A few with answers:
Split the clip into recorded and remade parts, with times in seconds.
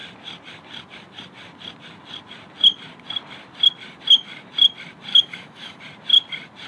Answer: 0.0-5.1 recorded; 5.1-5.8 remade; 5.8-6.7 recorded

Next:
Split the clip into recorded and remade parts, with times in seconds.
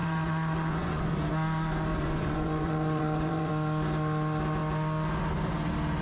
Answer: 0.0-1.1 remade; 1.1-1.9 recorded; 1.9-3.5 remade; 3.5-6.0 recorded